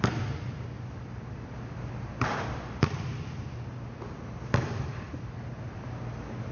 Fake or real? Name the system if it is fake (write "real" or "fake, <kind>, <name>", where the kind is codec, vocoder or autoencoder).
real